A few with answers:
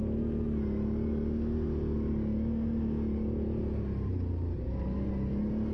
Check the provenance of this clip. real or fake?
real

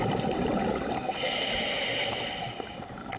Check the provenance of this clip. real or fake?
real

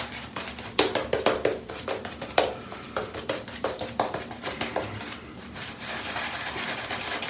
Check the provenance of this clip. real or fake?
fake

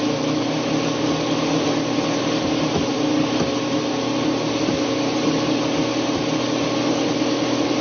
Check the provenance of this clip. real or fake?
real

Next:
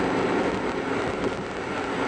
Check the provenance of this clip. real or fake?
real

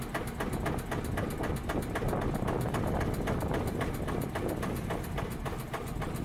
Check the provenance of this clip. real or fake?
real